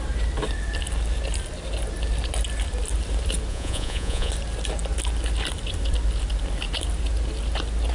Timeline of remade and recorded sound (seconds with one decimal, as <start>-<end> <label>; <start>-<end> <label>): 0.0-3.5 recorded; 3.5-4.3 remade; 4.3-7.9 recorded